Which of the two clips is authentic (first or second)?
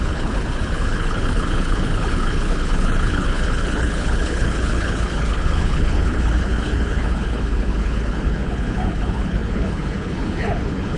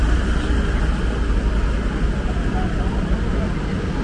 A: second